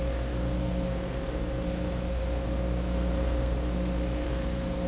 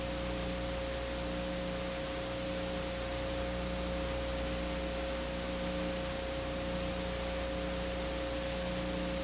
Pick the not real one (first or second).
first